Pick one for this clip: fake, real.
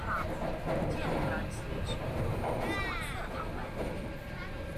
real